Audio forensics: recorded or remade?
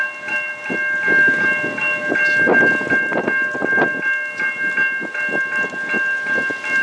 recorded